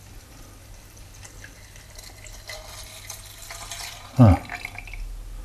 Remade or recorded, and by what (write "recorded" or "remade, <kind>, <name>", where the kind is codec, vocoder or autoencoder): recorded